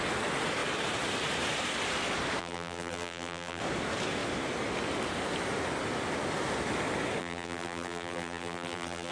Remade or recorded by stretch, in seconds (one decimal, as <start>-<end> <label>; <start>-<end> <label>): 0.0-2.4 recorded; 2.4-3.6 remade; 3.6-7.2 recorded; 7.2-9.1 remade